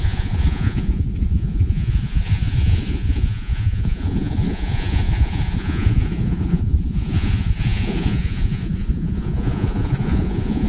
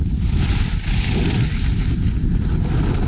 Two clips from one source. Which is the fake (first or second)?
first